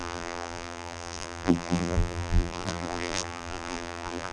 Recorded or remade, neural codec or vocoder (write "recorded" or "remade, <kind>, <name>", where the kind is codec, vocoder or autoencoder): remade, vocoder, BigVGAN v2